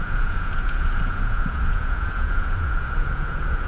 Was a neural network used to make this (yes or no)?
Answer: yes